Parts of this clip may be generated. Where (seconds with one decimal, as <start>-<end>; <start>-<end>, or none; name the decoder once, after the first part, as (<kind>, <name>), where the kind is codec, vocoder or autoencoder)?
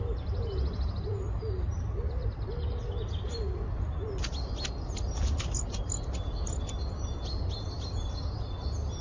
none